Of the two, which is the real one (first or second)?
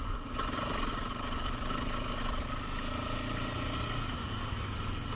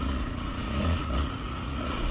first